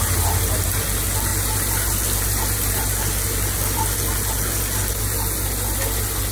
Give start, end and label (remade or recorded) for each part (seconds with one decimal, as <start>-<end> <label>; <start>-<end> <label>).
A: 0.0-6.3 recorded